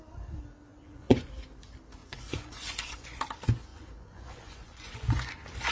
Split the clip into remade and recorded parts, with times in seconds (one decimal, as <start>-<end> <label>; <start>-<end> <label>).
0.0-0.7 recorded; 0.7-1.3 remade; 1.3-2.0 recorded; 2.0-3.2 remade; 3.2-3.7 recorded; 3.7-5.7 remade